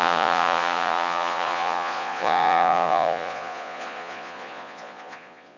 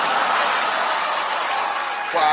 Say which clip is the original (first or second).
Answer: second